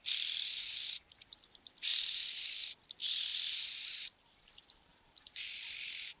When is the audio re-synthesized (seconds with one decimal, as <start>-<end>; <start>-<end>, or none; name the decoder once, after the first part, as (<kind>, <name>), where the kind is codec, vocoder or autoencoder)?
1.9-2.6 (vocoder, BigVGAN v2); 4.9-5.6